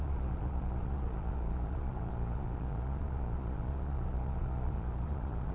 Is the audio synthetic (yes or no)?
yes